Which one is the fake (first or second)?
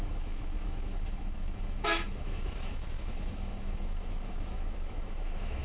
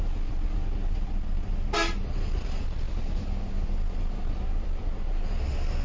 first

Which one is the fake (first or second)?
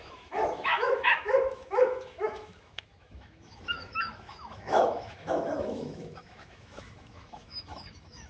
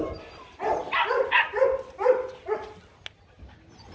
first